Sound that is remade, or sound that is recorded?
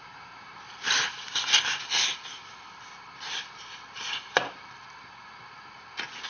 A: recorded